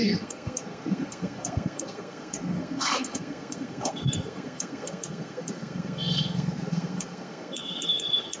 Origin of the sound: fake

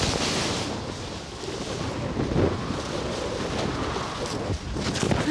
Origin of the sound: real